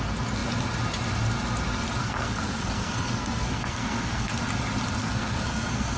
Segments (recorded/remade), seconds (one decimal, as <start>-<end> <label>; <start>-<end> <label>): 0.0-2.0 recorded; 2.0-4.3 remade; 4.3-5.0 recorded; 5.0-6.0 remade